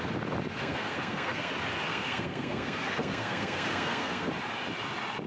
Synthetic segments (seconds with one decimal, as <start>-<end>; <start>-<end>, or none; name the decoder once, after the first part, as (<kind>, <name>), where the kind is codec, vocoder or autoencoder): 0.6-1.5 (codec, SNAC); 1.9-4.3